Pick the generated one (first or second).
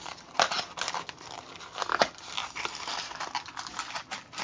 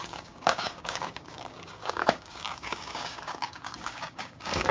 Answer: second